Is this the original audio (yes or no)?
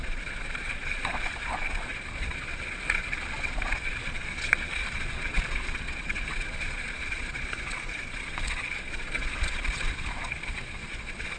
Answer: no